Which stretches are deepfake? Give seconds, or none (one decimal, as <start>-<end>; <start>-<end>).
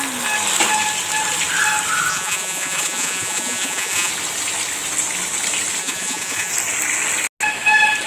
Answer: 2.1-4.1; 5.8-6.5